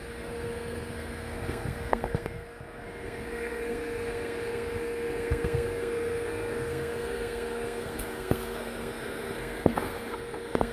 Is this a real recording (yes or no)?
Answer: no